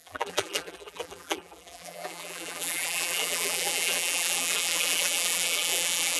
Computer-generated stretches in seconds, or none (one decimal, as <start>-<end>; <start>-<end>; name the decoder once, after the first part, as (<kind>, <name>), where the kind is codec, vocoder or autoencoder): 0.0-6.2 (vocoder, BigVGAN v2)